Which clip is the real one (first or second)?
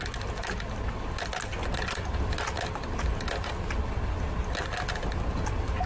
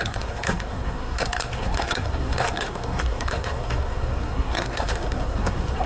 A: first